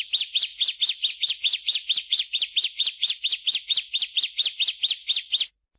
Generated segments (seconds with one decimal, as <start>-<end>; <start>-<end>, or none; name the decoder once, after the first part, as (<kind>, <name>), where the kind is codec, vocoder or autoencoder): 0.0-0.5 (vocoder, BigVGAN v2); 1.1-5.0